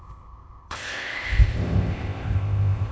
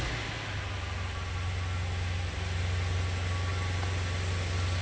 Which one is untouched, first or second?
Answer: second